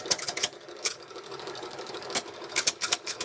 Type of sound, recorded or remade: remade